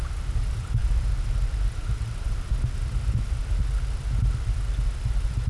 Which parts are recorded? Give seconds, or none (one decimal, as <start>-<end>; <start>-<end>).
0.0-5.5